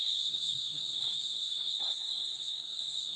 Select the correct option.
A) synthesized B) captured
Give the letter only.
A